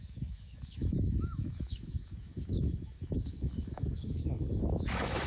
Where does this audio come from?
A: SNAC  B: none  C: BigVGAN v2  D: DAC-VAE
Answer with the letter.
D